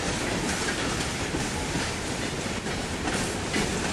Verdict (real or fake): fake